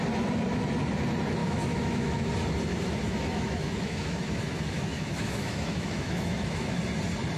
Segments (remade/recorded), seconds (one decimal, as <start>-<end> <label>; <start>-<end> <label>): 0.0-1.4 recorded; 1.4-2.3 remade; 2.3-2.7 recorded; 2.7-6.8 remade; 6.8-7.4 recorded